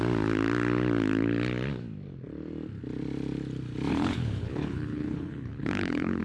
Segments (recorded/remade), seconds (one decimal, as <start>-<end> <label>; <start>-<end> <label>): 0.0-3.9 recorded; 3.9-6.2 remade